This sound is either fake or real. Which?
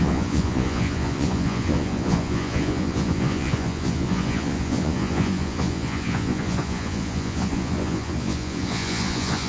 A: fake